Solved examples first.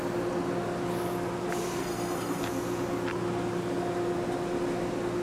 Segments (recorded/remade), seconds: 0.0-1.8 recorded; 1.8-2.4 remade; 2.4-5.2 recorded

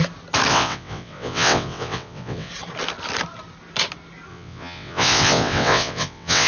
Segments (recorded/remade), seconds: 0.0-0.5 recorded; 0.5-2.5 remade; 2.5-4.3 recorded; 4.3-6.5 remade

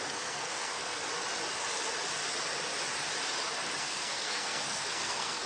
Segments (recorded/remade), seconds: 0.0-1.0 remade; 1.0-3.8 recorded; 3.8-5.5 remade

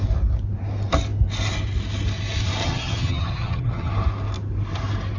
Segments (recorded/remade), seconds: 0.0-2.6 recorded; 2.6-3.9 remade; 3.9-5.2 recorded

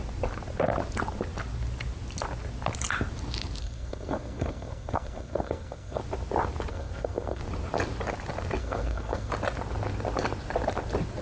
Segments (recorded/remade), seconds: 0.0-3.6 recorded; 3.6-6.0 remade; 6.0-6.7 recorded; 6.7-7.4 remade; 7.4-8.6 recorded; 8.6-9.3 remade; 9.3-11.2 recorded

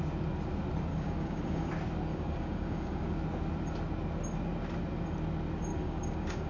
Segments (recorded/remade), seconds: 0.0-0.9 recorded; 0.9-1.7 remade; 1.7-2.1 recorded; 2.1-3.1 remade; 3.1-5.7 recorded; 5.7-6.5 remade

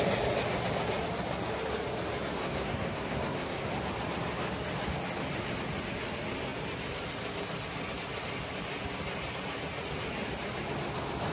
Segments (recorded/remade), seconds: 0.0-2.4 recorded; 2.4-3.7 remade; 3.7-11.3 recorded

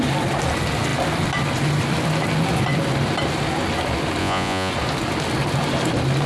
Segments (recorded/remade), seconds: 0.0-4.2 recorded; 4.2-4.7 remade; 4.7-6.3 recorded